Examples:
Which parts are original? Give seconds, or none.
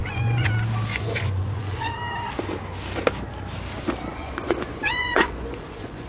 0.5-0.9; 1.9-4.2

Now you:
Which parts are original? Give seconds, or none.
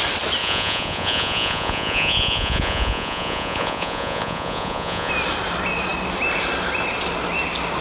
0.0-0.4; 5.1-7.8